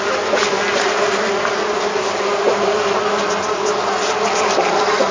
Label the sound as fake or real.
real